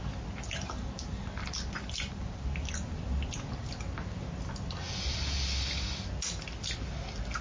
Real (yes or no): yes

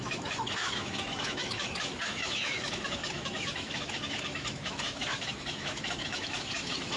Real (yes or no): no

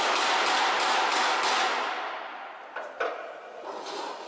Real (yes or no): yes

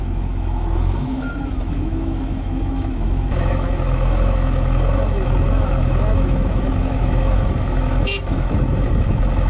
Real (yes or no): no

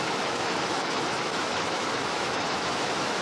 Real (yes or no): no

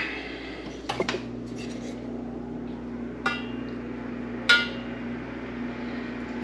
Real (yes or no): yes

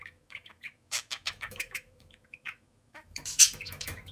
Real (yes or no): no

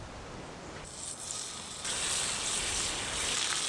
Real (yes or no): yes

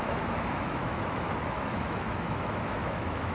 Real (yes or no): no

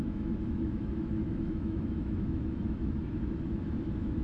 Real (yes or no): no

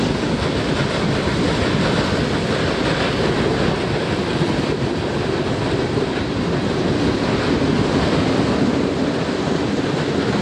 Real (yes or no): yes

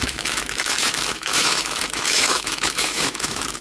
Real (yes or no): no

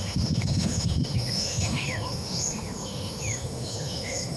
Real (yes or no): no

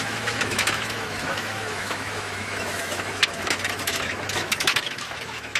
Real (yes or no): no